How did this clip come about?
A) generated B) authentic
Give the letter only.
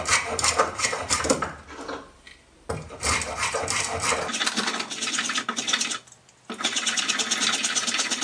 B